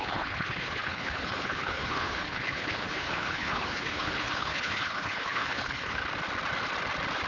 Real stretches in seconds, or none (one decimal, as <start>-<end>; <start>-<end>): 6.0-7.3